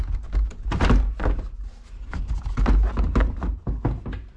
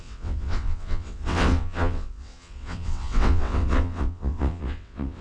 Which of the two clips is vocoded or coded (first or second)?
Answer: second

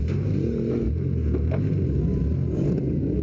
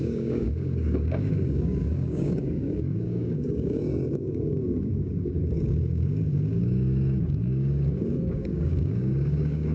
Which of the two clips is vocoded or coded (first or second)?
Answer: second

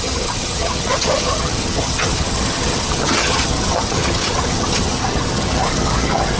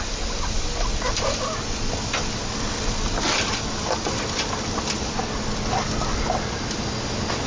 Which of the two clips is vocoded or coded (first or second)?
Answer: first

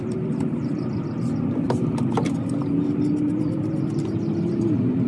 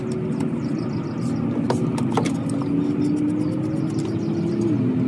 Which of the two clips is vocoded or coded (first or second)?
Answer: first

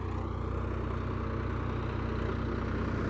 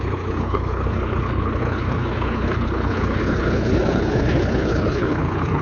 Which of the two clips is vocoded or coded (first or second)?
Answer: second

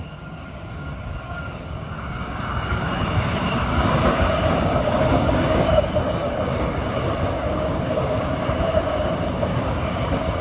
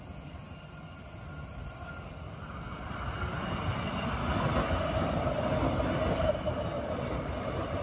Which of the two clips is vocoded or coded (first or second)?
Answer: first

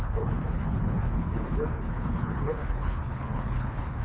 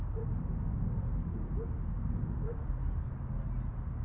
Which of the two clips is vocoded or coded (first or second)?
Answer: first